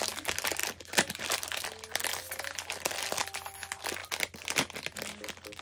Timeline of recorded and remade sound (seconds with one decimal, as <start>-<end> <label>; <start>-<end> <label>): 0.0-5.6 recorded